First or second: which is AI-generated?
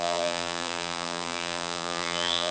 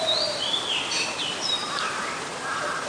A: first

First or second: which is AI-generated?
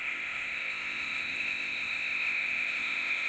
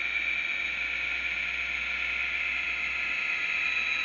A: first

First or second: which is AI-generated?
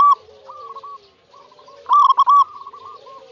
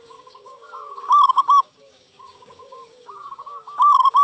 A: second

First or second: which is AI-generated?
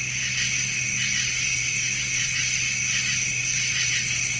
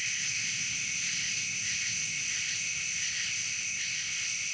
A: second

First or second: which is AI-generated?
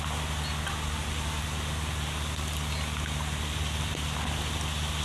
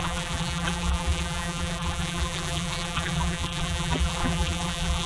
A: second